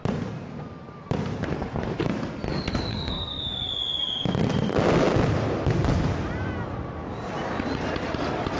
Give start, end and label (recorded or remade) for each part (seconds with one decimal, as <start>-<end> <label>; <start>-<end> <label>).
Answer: 0.0-2.9 recorded; 2.9-3.4 remade; 3.4-8.6 recorded

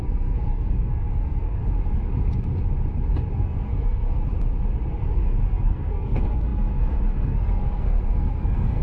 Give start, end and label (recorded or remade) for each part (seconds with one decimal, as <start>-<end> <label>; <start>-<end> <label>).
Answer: 0.0-1.6 remade; 1.6-3.3 recorded; 3.3-4.3 remade; 4.3-4.9 recorded; 4.9-8.8 remade

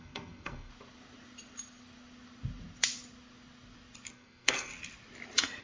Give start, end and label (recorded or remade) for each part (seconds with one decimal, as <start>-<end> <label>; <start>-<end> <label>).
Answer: 0.0-0.7 remade; 0.7-4.1 recorded; 4.1-4.7 remade; 4.7-5.6 recorded

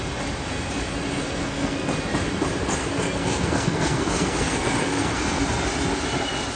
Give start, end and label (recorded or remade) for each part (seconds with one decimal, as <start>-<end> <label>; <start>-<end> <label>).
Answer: 0.0-1.1 recorded; 1.1-1.9 remade; 1.9-2.8 recorded; 2.8-5.4 remade; 5.4-6.6 recorded

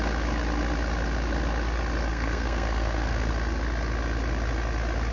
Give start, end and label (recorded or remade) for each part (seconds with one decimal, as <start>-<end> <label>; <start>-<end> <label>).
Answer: 0.0-2.1 recorded; 2.1-3.3 remade; 3.3-5.1 recorded

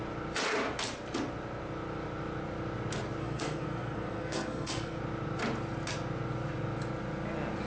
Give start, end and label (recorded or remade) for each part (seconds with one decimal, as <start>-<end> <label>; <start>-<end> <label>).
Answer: 0.0-3.2 recorded; 3.2-5.0 remade; 5.0-7.7 recorded

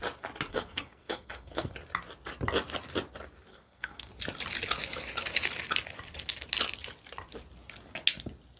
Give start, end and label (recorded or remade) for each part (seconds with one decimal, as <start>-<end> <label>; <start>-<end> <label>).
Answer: 0.0-0.5 recorded; 0.5-1.7 remade; 1.7-3.5 recorded; 3.5-4.1 remade; 4.1-8.6 recorded

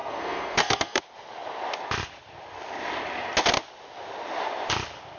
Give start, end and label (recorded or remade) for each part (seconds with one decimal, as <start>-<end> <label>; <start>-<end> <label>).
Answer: 0.0-1.0 remade; 1.0-5.2 recorded